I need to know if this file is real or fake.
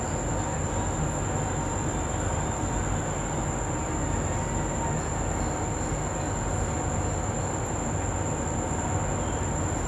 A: real